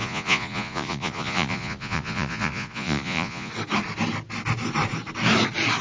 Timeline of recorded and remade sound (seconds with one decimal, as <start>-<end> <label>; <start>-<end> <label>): 0.0-3.5 remade; 3.5-5.8 recorded